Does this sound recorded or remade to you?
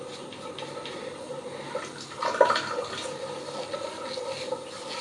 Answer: recorded